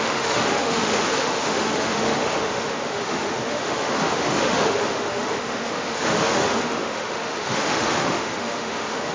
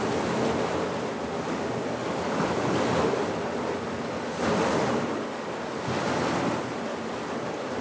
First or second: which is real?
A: second